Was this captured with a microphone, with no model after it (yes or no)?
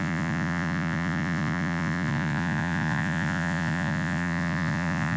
no